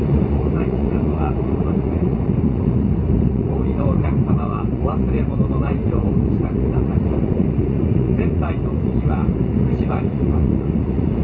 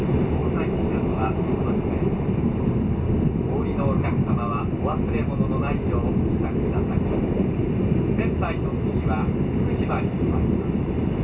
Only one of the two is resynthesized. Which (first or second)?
first